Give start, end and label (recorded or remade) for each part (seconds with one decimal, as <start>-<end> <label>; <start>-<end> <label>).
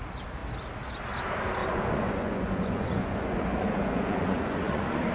0.0-1.6 recorded; 1.6-5.1 remade